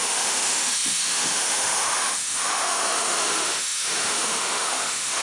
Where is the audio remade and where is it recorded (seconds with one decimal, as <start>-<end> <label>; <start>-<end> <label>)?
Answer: 0.0-5.2 remade